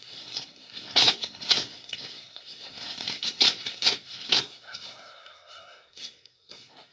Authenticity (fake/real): fake